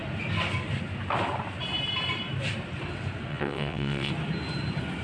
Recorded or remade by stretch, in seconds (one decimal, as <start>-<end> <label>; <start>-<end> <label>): 0.0-3.3 recorded; 3.3-4.1 remade; 4.1-5.0 recorded